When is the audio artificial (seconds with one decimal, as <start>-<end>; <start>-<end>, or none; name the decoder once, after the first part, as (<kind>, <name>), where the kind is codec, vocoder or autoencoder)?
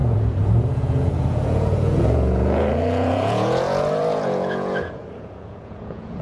0.0-6.2 (vocoder, Vocos)